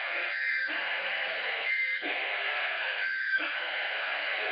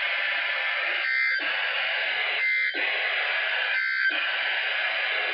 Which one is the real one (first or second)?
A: second